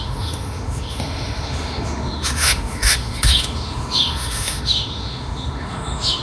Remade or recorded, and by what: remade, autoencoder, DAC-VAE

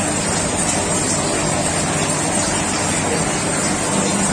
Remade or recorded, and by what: recorded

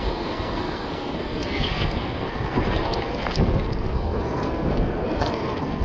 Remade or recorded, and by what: remade, codec, SNAC